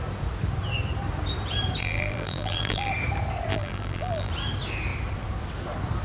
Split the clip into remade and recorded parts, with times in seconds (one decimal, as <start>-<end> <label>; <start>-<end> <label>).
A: 0.0-1.8 recorded; 1.8-2.9 remade; 2.9-3.5 recorded; 3.5-4.3 remade; 4.3-6.0 recorded